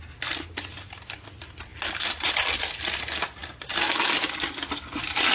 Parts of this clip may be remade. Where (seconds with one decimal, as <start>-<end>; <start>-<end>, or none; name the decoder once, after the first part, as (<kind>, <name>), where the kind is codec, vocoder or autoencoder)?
none